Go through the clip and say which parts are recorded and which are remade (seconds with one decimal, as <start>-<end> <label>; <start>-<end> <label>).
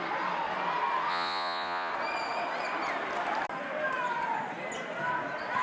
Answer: 0.0-1.1 recorded; 1.1-1.9 remade; 1.9-5.6 recorded